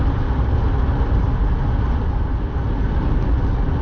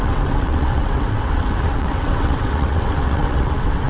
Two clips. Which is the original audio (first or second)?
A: first